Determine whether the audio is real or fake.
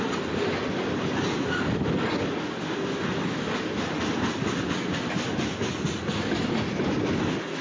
real